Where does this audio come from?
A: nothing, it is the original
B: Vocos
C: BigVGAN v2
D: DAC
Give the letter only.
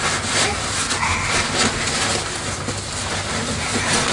A